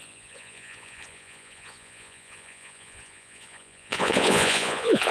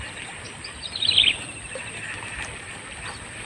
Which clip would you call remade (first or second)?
first